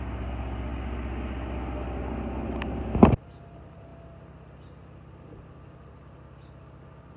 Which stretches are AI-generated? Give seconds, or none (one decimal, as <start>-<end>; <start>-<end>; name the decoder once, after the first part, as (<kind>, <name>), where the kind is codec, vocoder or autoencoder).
none